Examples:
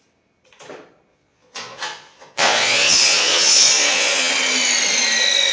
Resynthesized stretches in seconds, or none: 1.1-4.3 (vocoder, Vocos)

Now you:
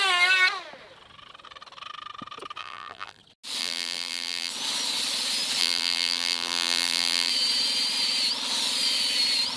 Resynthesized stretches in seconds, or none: 2.6-3.2 (vocoder, BigVGAN v2); 3.6-4.5; 5.6-7.3

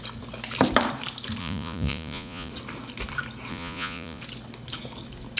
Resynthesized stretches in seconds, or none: 1.4-2.5 (vocoder, Vocos); 3.5-4.2

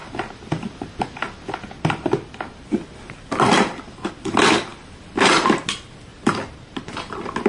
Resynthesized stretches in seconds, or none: none

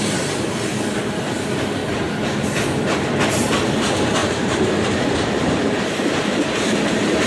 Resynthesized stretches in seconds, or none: 0.0-0.7 (vocoder, BigVGAN v2); 1.3-1.8; 3.8-7.3

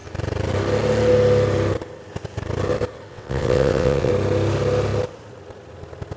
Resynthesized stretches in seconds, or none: 3.1-4.1 (vocoder, WaveNeXt)